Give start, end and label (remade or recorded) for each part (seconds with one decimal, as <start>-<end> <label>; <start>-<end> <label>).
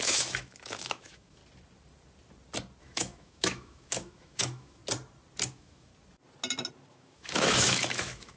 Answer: 0.0-1.4 remade; 1.4-2.8 recorded; 2.8-4.8 remade; 4.8-5.5 recorded; 5.5-5.9 remade; 5.9-6.9 recorded; 6.9-8.4 remade